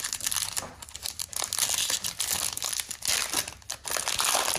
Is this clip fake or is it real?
real